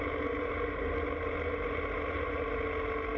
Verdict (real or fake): real